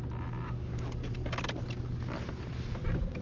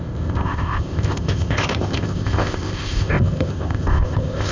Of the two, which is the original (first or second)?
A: first